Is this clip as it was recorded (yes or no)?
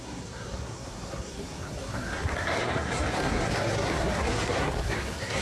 no